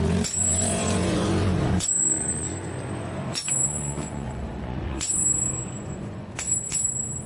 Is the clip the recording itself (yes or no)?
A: no